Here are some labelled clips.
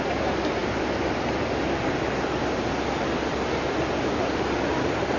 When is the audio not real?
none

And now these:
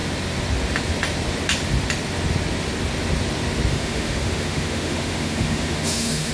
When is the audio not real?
3.7-6.3 (autoencoder, DAC-VAE)

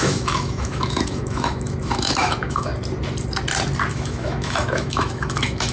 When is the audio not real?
0.0-2.7 (autoencoder, DAC-VAE); 3.9-5.7

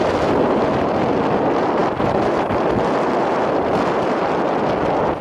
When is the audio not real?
none

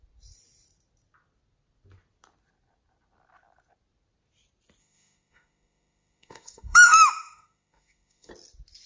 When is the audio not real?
4.8-8.3 (autoencoder, DAC-VAE)

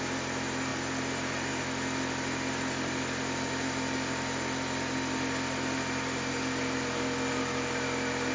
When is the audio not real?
none